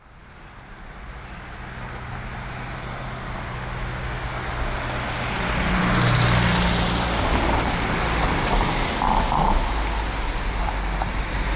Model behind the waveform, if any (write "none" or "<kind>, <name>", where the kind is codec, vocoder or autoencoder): none